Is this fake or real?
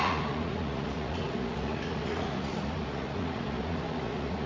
fake